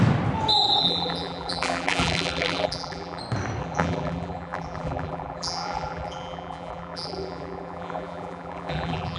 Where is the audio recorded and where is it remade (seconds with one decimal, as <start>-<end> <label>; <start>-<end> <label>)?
0.0-0.8 recorded; 0.8-3.2 remade; 3.2-3.6 recorded; 3.6-9.2 remade